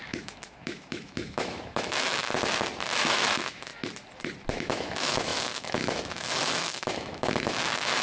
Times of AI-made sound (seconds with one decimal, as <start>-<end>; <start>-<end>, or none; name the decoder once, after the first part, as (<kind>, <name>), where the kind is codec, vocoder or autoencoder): 0.0-2.3 (autoencoder, DAC-VAE); 3.0-3.7; 4.5-8.0